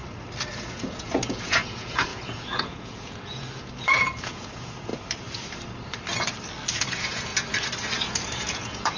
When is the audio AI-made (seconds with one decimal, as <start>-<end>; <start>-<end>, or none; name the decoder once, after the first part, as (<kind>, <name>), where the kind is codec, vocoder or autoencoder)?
0.5-4.9 (vocoder, Vocos); 6.7-7.3; 8.1-9.0